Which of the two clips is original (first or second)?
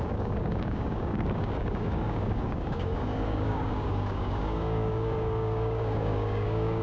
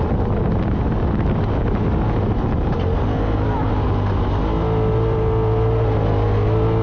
second